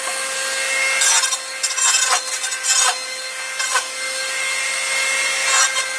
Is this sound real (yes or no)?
yes